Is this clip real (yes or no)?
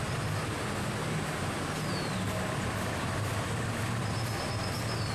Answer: yes